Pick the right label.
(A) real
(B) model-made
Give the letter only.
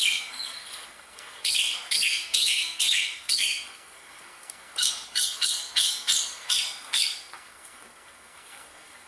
B